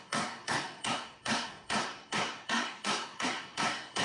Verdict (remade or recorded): remade